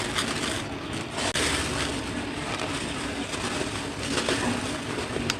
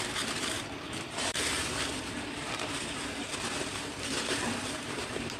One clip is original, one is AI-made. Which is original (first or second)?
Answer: first